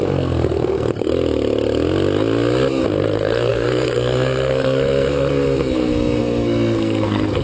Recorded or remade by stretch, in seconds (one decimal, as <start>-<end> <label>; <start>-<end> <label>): 0.0-1.1 remade; 1.1-2.8 recorded; 2.8-7.4 remade

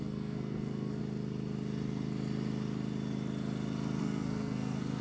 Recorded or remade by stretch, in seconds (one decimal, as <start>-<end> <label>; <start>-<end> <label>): 0.0-1.0 remade; 1.0-4.0 recorded; 4.0-5.0 remade

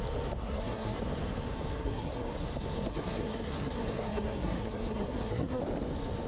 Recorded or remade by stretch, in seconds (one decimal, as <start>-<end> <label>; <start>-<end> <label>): 0.0-0.4 recorded; 0.4-1.0 remade; 1.0-1.7 recorded; 1.7-2.5 remade; 2.5-2.9 recorded; 2.9-5.6 remade; 5.6-6.3 recorded